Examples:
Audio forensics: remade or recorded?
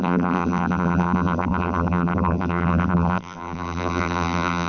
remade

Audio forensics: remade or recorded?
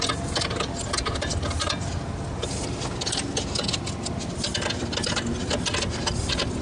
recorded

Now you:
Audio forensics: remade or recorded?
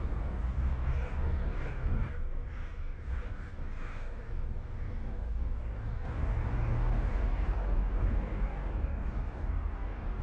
remade